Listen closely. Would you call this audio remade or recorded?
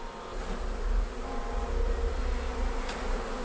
recorded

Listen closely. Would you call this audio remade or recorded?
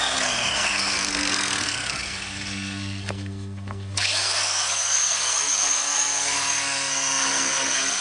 remade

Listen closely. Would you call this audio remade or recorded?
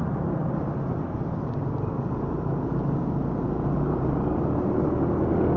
recorded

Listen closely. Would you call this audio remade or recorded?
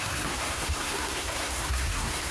remade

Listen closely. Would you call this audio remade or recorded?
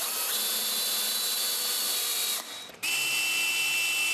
recorded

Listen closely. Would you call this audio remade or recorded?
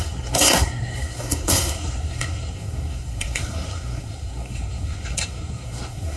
remade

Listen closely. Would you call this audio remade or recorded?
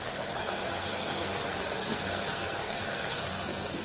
remade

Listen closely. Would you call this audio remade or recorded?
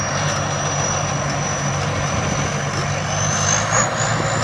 recorded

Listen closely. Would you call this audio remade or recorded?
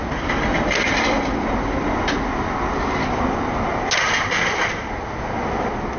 recorded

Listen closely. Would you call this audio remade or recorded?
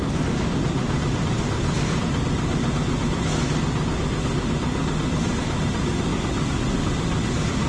recorded